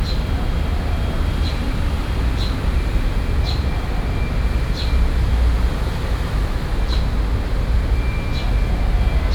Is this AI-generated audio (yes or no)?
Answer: no